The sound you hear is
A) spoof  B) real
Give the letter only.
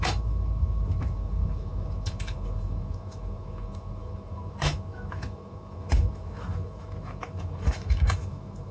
A